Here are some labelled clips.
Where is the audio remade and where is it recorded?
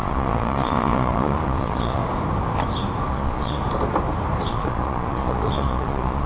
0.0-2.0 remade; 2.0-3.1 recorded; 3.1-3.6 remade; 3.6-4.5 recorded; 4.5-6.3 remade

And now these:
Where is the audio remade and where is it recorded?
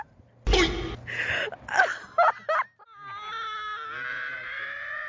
0.0-4.1 recorded; 4.1-5.1 remade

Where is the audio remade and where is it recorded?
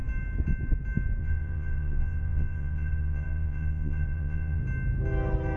0.0-1.2 recorded; 1.2-4.6 remade; 4.6-5.6 recorded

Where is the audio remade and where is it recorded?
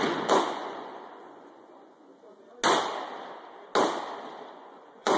0.0-2.1 remade; 2.1-4.5 recorded; 4.5-5.2 remade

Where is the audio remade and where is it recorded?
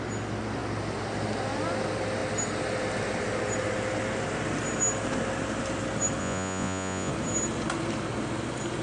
0.0-6.2 recorded; 6.2-7.1 remade; 7.1-8.8 recorded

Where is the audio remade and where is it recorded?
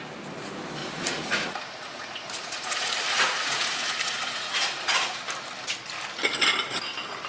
0.0-0.8 recorded; 0.8-5.2 remade; 5.2-7.3 recorded